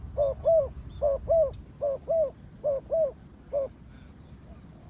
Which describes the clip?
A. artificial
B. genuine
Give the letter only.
B